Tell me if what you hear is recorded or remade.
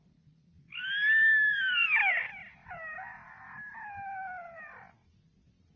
recorded